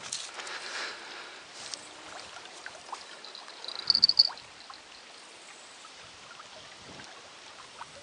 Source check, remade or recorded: recorded